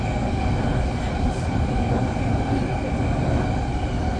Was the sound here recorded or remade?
recorded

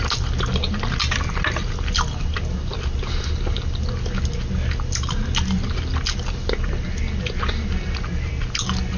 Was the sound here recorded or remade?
recorded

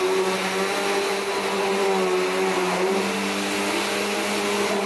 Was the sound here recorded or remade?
recorded